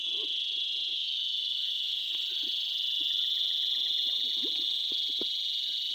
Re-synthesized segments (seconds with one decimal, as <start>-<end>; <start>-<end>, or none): 0.9-2.1